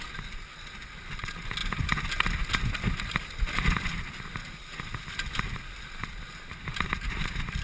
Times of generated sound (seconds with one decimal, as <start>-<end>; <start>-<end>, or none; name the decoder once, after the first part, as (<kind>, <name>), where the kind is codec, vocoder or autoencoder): none